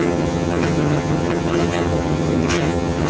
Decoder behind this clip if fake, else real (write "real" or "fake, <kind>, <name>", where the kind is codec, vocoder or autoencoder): fake, vocoder, HiFi-GAN